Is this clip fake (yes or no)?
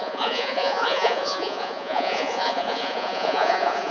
yes